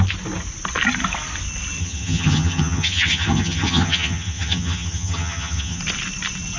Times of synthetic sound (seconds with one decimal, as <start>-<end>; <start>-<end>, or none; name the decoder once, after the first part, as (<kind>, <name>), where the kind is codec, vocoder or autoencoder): 1.8-5.8 (vocoder, HiFi-GAN)